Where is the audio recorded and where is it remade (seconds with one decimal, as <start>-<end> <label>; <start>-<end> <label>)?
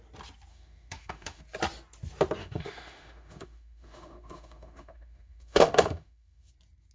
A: 0.0-0.5 recorded; 0.5-1.4 remade; 1.4-2.4 recorded; 2.4-6.5 remade; 6.5-6.9 recorded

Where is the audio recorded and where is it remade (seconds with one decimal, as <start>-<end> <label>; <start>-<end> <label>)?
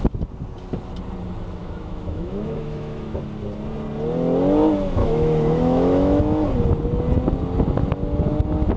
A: 0.0-1.6 recorded; 1.6-3.2 remade; 3.2-5.0 recorded; 5.0-6.2 remade; 6.2-8.8 recorded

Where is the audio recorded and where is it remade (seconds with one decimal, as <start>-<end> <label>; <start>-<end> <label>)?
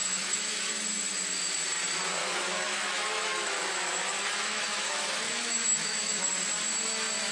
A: 0.0-0.7 remade; 0.7-2.2 recorded; 2.2-6.3 remade; 6.3-7.3 recorded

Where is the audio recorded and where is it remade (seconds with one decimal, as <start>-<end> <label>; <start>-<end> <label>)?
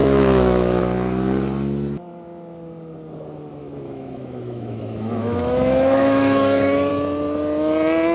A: 0.0-0.8 remade; 0.8-3.6 recorded; 3.6-6.9 remade; 6.9-8.1 recorded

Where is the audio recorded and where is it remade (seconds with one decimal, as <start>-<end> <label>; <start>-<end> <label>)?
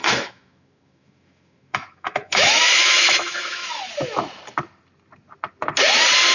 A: 0.0-3.8 remade; 3.8-6.3 recorded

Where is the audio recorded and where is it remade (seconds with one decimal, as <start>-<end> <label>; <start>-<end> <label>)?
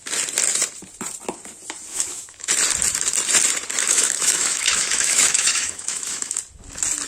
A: 0.0-1.9 recorded; 1.9-2.5 remade; 2.5-3.8 recorded; 3.8-6.4 remade; 6.4-7.1 recorded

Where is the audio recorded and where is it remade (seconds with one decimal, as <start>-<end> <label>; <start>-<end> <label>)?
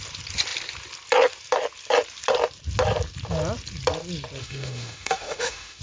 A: 0.0-4.4 recorded; 4.4-5.8 remade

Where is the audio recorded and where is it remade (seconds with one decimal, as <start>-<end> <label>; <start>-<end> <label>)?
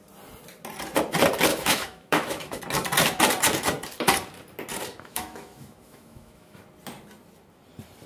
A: 0.0-1.5 recorded; 1.5-2.6 remade; 2.6-4.9 recorded; 4.9-6.6 remade; 6.6-8.1 recorded